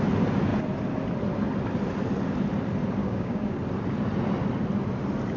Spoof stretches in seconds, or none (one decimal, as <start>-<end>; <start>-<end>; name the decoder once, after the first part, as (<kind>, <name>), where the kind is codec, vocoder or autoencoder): 3.0-3.6 (codec, DAC)